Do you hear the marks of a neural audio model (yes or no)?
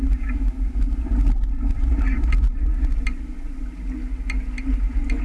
no